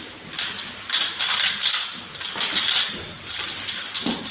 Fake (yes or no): no